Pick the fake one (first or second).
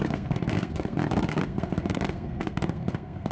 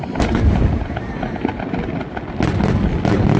first